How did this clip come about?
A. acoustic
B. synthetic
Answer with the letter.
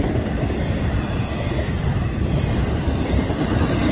B